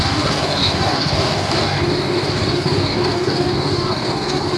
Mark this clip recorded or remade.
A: remade